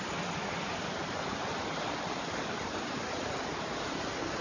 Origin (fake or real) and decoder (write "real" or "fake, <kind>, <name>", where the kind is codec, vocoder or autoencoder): real